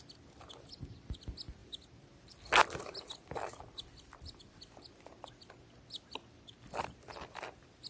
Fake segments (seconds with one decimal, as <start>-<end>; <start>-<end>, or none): none